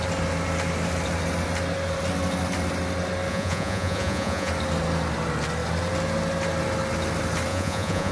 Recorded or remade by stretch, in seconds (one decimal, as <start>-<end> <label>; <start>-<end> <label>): 0.0-3.3 recorded; 3.3-4.5 remade; 4.5-7.5 recorded; 7.5-8.1 remade